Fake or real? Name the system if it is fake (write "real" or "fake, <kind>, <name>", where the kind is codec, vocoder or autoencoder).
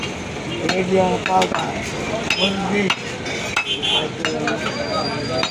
real